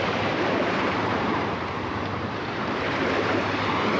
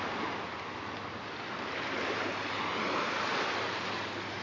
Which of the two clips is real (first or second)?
second